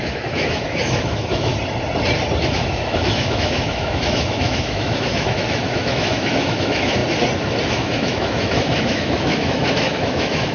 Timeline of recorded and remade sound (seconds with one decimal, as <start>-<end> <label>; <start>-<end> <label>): 0.0-1.5 remade; 1.5-2.5 recorded; 2.5-7.0 remade; 7.0-7.7 recorded; 7.7-10.5 remade